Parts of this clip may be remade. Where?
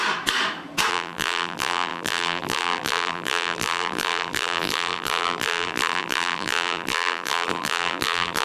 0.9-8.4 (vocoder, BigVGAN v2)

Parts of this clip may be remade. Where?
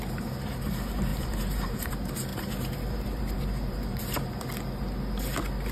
1.1-1.9 (vocoder, BigVGAN v2); 2.3-4.3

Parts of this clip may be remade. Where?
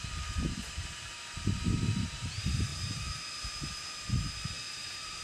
0.0-2.7 (vocoder, BigVGAN v2); 4.7-5.2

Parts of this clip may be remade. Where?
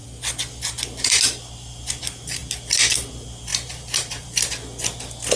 3.5-4.5 (vocoder, BigVGAN v2)